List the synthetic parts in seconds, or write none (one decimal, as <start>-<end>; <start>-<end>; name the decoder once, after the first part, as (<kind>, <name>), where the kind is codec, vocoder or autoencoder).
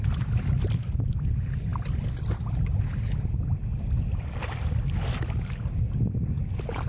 none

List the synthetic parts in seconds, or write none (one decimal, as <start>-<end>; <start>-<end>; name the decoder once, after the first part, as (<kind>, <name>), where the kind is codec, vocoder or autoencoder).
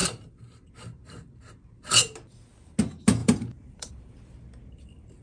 0.0-0.7 (vocoder, BigVGAN v2); 3.2-3.9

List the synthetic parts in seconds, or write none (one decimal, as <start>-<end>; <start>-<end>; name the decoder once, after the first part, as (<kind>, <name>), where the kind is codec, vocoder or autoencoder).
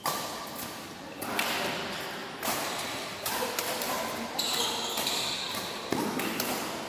2.2-3.5 (vocoder, BigVGAN v2)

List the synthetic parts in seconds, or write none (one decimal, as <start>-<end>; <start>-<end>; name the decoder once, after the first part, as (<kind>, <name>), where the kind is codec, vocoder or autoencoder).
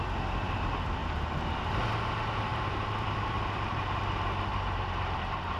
2.5-4.0 (vocoder, BigVGAN v2); 4.5-5.6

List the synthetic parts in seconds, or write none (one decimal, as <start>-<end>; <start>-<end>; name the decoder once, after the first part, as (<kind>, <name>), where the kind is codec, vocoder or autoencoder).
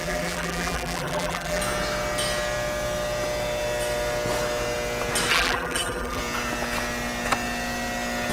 0.0-1.6 (vocoder, BigVGAN v2); 5.3-6.2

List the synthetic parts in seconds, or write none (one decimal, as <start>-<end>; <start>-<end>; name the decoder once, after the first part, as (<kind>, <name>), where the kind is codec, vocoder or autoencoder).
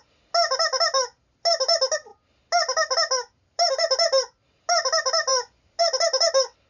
none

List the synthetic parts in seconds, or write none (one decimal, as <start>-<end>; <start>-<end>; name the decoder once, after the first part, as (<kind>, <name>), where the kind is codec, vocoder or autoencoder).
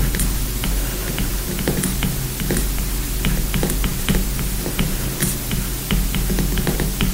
none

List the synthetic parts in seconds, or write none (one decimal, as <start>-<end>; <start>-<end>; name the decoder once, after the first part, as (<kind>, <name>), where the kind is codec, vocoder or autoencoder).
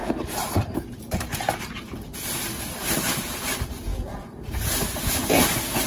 0.0-3.5 (vocoder, BigVGAN v2); 3.9-5.0